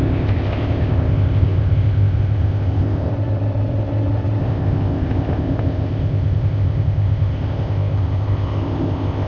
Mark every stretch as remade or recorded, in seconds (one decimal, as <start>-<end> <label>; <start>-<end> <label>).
0.0-3.1 remade; 3.1-4.4 recorded; 4.4-9.3 remade

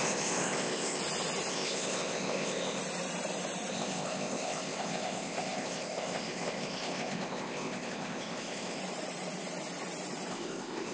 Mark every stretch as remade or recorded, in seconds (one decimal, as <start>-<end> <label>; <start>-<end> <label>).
0.0-1.0 remade; 1.0-1.5 recorded; 1.5-2.8 remade; 2.8-3.7 recorded; 3.7-8.8 remade; 8.8-10.3 recorded; 10.3-10.9 remade

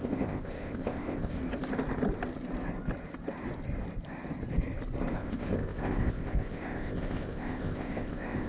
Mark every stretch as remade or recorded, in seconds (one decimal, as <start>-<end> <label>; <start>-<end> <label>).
0.0-1.4 remade; 1.4-5.1 recorded; 5.1-8.5 remade

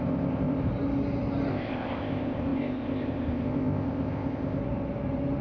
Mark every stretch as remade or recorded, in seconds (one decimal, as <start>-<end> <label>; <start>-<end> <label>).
0.0-0.7 remade; 0.7-1.5 recorded; 1.5-4.6 remade; 4.6-5.4 recorded